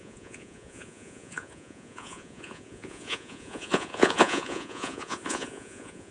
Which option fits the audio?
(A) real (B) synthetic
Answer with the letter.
B